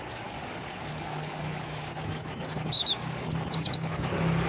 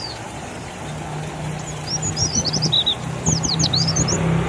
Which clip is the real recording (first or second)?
second